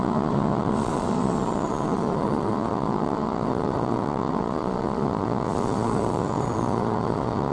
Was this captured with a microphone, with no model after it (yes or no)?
no